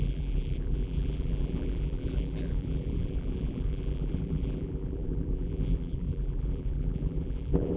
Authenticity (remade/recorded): remade